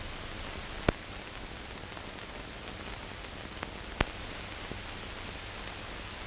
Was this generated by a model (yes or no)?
no